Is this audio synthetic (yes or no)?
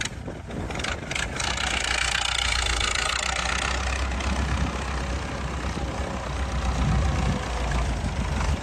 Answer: no